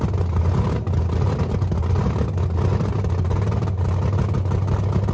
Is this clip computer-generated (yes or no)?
no